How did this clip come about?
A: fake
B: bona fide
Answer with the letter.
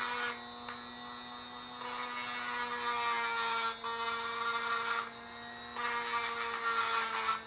B